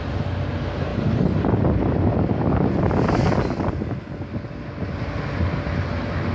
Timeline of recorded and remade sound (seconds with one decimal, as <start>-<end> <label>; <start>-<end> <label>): 0.0-6.3 recorded